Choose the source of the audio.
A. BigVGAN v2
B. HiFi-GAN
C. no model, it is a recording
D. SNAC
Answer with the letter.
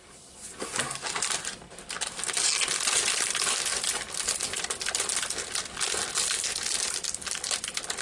C